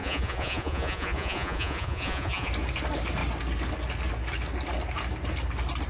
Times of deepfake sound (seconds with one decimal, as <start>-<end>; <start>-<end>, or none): 0.0-2.5